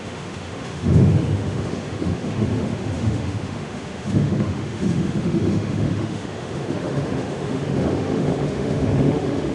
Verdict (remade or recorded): remade